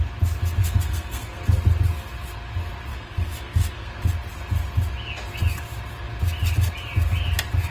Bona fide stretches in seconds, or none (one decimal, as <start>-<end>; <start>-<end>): 0.0-0.6; 1.4-2.9; 3.9-7.7